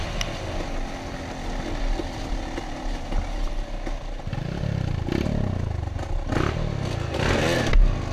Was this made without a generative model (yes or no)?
yes